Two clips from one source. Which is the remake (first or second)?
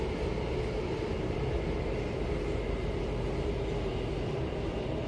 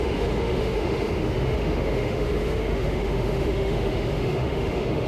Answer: second